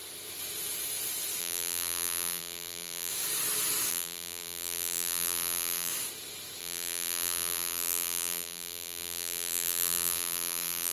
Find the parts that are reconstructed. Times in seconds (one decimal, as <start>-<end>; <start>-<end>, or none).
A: 1.4-3.1; 3.9-5.9; 6.6-10.9